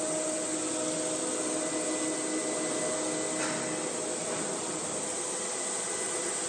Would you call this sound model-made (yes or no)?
no